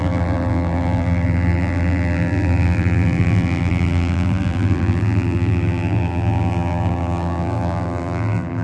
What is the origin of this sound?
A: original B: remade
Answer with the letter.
B